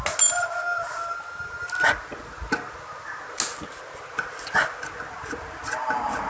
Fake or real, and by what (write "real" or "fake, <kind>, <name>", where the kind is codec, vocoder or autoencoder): real